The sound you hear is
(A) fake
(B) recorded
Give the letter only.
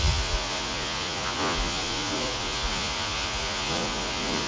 A